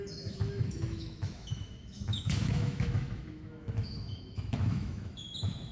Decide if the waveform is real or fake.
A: fake